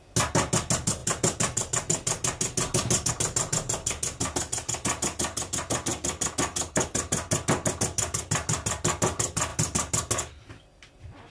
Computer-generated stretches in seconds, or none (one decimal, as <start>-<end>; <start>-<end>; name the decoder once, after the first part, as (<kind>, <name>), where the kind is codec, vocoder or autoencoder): none